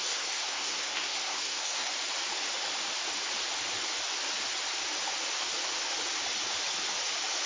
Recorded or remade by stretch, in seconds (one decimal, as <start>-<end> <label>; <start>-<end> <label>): 0.0-1.9 remade; 1.9-7.5 recorded